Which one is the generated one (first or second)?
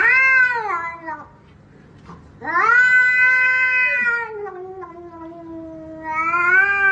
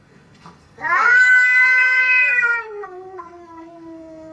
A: second